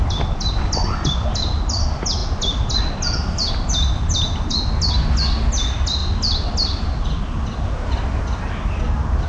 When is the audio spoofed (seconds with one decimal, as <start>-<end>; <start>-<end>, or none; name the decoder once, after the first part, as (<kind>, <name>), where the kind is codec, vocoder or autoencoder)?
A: none